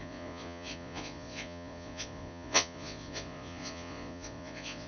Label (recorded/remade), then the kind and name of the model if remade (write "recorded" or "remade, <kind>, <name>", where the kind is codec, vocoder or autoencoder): remade, vocoder, Vocos